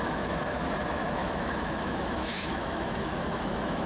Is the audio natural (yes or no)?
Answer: no